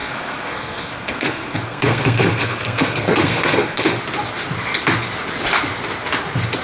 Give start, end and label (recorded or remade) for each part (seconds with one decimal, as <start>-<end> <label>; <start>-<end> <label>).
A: 0.0-4.0 remade; 4.0-6.6 recorded